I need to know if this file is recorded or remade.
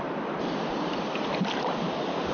recorded